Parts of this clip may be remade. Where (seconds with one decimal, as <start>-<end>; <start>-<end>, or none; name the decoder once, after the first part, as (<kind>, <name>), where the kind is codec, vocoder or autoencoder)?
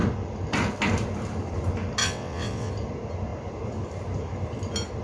2.0-2.7 (vocoder, WaveNeXt)